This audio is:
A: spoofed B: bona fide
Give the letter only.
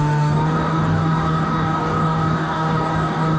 A